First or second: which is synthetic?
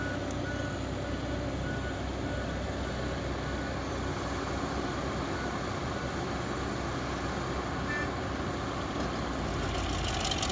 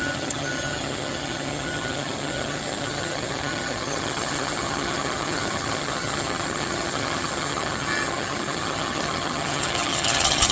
second